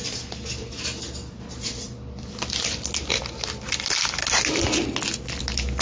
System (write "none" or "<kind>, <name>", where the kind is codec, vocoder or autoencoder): none